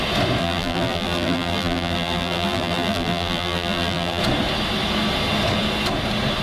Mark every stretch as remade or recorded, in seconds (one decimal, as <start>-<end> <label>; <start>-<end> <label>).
0.0-0.4 recorded; 0.4-4.2 remade; 4.2-6.4 recorded